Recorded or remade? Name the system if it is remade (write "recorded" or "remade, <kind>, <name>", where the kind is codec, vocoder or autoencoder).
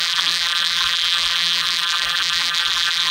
remade, vocoder, BigVGAN v2